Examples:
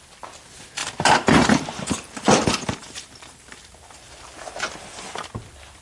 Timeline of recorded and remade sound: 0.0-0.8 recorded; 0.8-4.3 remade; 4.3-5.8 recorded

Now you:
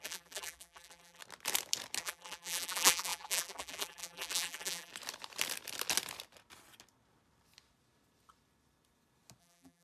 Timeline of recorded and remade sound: 0.0-1.2 remade; 1.2-2.0 recorded; 2.0-4.9 remade; 4.9-9.4 recorded; 9.4-9.8 remade

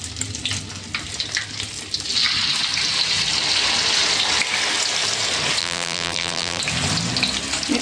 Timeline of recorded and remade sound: 0.0-5.6 recorded; 5.6-6.6 remade; 6.6-7.8 recorded

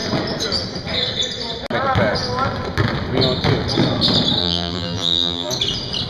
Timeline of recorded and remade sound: 0.0-4.4 recorded; 4.4-5.5 remade; 5.5-6.1 recorded

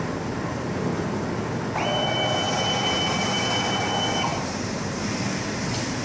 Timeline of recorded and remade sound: 0.0-4.3 recorded; 4.3-5.0 remade; 5.0-6.0 recorded

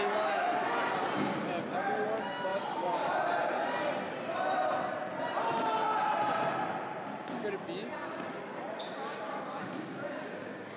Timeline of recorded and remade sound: 0.0-2.5 recorded; 2.5-5.2 remade; 5.2-7.8 recorded; 7.8-8.9 remade; 8.9-10.8 recorded

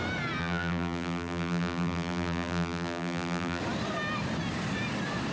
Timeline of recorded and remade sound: 0.0-0.4 recorded; 0.4-3.6 remade; 3.6-5.3 recorded

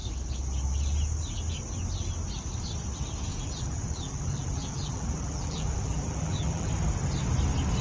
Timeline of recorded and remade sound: 0.0-3.3 recorded; 3.3-6.7 remade; 6.7-7.8 recorded